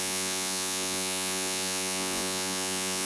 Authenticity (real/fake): fake